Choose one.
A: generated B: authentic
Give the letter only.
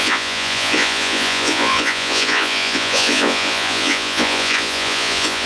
A